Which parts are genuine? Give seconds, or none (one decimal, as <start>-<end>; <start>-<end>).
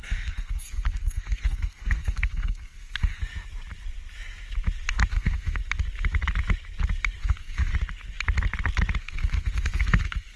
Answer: 3.2-5.1; 5.6-7.2; 7.7-9.0